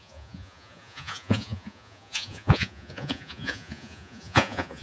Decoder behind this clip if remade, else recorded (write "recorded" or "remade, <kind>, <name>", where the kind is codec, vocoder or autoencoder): remade, vocoder, Vocos